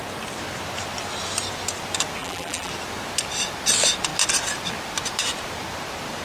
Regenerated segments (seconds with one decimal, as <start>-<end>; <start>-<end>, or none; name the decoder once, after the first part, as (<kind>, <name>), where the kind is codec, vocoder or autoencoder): 2.2-2.7 (vocoder, BigVGAN v2)